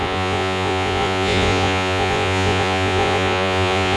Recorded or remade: remade